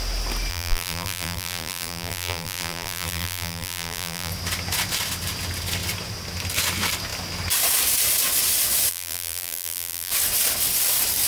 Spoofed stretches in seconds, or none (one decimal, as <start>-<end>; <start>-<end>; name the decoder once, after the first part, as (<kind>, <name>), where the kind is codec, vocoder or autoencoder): 0.5-4.3 (vocoder, BigVGAN v2); 8.9-10.1